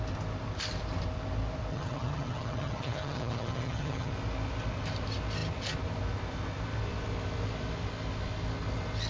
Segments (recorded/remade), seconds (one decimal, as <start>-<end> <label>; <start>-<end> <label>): 0.0-1.7 recorded; 1.7-4.1 remade; 4.1-9.1 recorded